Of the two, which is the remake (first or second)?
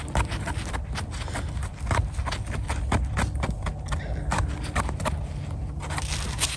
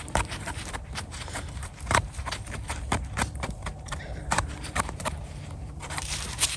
second